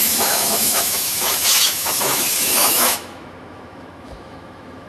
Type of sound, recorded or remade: remade